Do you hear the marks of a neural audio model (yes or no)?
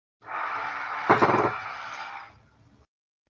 no